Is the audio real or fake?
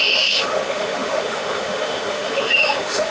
fake